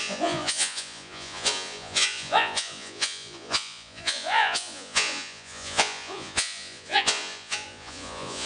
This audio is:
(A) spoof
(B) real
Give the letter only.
A